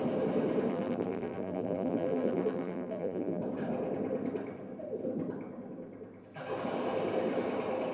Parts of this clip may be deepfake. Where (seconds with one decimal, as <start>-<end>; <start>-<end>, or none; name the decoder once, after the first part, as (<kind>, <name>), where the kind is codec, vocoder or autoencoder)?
0.7-3.4 (vocoder, BigVGAN v2)